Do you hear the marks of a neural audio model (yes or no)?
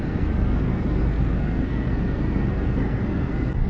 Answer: yes